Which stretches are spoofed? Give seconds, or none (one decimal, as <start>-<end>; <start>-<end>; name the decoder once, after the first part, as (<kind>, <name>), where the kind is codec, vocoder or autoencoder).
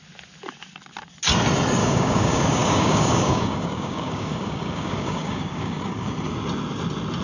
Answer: 1.8-6.1 (codec, DAC)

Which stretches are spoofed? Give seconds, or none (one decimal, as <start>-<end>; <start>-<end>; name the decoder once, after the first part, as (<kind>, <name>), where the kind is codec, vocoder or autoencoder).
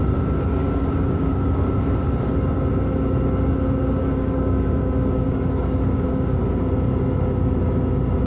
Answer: 0.6-1.8 (codec, DAC); 4.0-6.4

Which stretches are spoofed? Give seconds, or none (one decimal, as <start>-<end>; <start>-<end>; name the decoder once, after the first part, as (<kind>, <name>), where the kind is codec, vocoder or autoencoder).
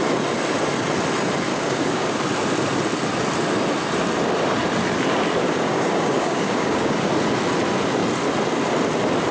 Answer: 1.5-2.2 (codec, DAC); 5.4-7.1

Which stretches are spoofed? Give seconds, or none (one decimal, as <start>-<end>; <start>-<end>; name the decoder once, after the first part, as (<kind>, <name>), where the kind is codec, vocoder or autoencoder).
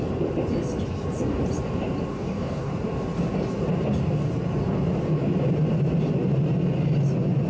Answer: 2.1-2.7 (codec, DAC)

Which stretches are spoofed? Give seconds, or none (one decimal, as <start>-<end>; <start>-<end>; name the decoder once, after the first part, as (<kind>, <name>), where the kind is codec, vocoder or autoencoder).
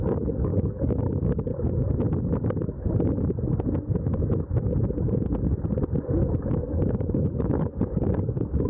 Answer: 0.0-1.5 (codec, DAC); 6.5-8.7